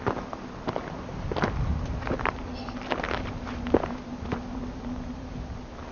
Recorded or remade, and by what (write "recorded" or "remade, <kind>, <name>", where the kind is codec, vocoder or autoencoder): recorded